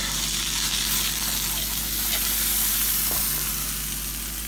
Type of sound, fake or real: real